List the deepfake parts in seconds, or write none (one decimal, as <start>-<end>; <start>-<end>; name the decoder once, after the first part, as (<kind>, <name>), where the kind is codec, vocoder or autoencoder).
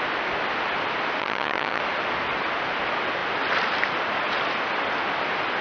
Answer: 1.2-1.8 (vocoder, HiFi-GAN)